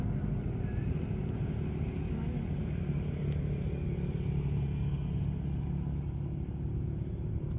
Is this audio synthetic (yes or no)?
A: no